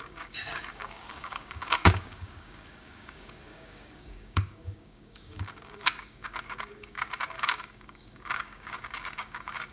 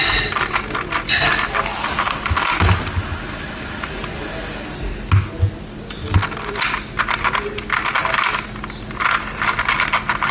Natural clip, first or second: second